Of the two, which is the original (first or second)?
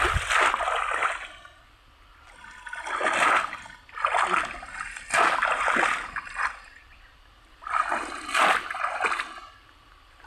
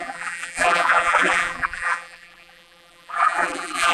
first